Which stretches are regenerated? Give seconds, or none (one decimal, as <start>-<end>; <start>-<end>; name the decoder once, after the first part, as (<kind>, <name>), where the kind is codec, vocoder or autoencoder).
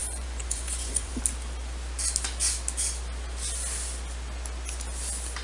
0.0-1.2 (vocoder, Vocos)